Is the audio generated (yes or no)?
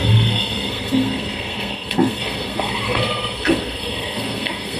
yes